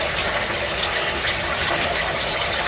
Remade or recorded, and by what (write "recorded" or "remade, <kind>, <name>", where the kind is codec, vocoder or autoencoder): recorded